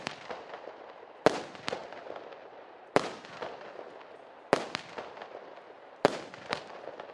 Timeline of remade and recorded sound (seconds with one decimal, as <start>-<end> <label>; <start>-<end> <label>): 0.0-7.1 recorded